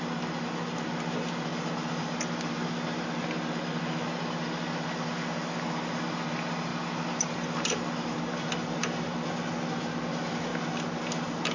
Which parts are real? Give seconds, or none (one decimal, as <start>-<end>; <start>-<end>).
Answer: 0.0-11.5